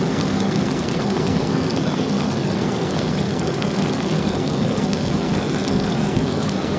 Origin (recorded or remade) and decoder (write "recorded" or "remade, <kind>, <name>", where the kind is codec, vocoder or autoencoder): remade, codec, SNAC